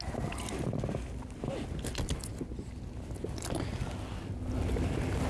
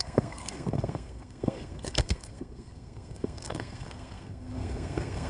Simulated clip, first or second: second